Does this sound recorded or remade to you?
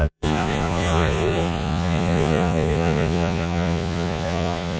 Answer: remade